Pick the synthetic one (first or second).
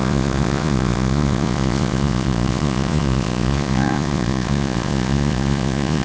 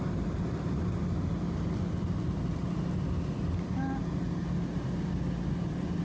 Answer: first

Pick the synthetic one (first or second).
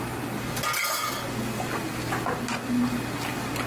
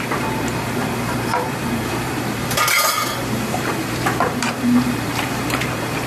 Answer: second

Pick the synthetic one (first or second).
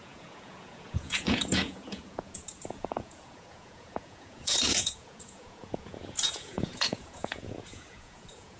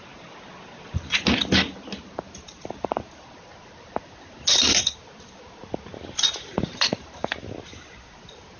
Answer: first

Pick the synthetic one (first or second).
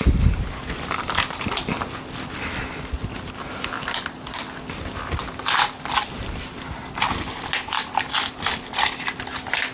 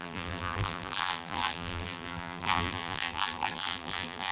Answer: second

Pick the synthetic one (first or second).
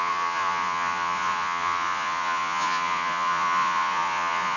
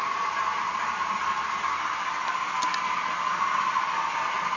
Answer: first